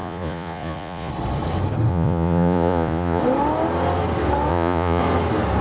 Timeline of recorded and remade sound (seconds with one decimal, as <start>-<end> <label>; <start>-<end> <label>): 0.0-1.1 remade; 1.1-1.9 recorded; 1.9-3.2 remade; 3.2-4.5 recorded; 4.5-5.0 remade; 5.0-5.6 recorded

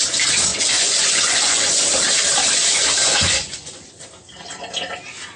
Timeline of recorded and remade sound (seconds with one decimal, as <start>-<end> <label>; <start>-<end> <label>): 0.0-0.5 recorded; 0.5-1.8 remade; 1.8-3.0 recorded; 3.0-4.0 remade; 4.0-5.4 recorded

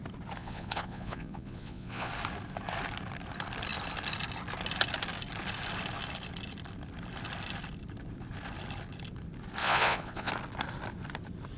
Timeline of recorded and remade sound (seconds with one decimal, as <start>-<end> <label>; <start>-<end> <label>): 0.0-0.4 recorded; 0.4-2.1 remade; 2.1-9.6 recorded; 9.6-10.3 remade; 10.3-11.6 recorded

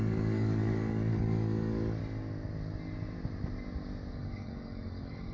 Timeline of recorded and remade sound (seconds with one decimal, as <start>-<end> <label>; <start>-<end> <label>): 0.0-2.0 remade; 2.0-4.1 recorded; 4.1-5.3 remade

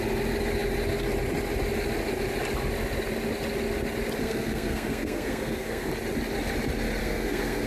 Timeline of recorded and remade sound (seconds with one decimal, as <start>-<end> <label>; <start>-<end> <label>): 0.0-4.2 recorded; 4.2-5.9 remade; 5.9-7.0 recorded; 7.0-7.7 remade